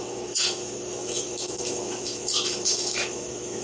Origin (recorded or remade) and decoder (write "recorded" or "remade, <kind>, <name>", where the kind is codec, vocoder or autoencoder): remade, autoencoder, DAC-VAE